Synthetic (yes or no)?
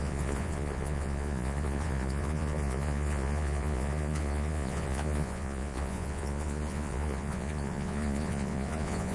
yes